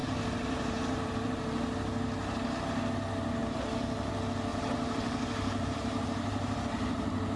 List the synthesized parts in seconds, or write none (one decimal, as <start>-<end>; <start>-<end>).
0.0-1.4; 3.4-4.1; 4.5-6.6